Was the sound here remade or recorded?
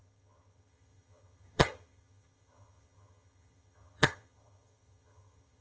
remade